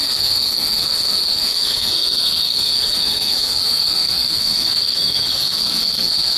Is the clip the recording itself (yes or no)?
no